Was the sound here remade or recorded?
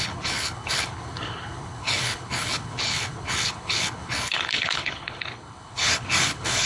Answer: remade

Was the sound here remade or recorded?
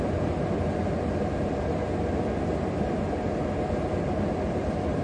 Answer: recorded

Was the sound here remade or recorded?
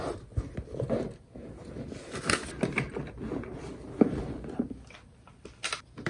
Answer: recorded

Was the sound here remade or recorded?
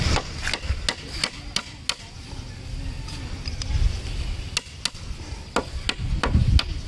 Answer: recorded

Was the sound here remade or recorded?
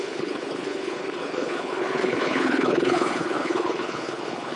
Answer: remade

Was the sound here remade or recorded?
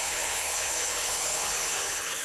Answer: remade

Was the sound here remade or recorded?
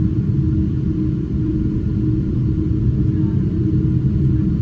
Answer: recorded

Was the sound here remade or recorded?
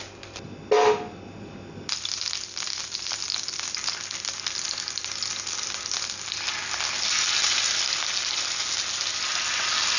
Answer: recorded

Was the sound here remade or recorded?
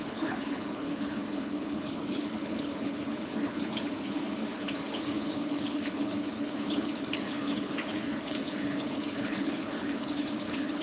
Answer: remade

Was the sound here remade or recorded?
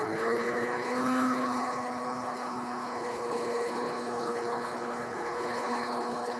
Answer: remade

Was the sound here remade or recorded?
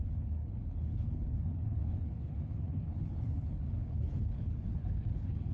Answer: remade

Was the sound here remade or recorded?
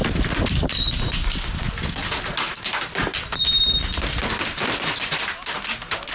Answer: recorded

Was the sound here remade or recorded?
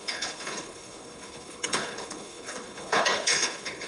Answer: remade